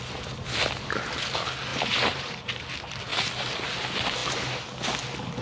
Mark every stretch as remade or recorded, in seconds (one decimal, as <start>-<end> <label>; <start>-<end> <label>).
0.0-1.7 recorded; 1.7-2.6 remade; 2.6-3.1 recorded; 3.1-3.6 remade; 3.6-5.4 recorded